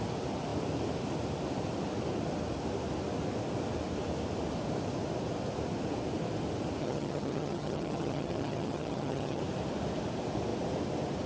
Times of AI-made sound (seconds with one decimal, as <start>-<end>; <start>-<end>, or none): 6.8-9.4